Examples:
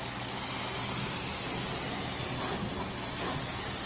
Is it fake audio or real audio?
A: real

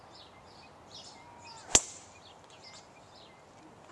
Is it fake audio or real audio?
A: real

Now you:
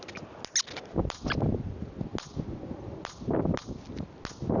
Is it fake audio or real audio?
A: real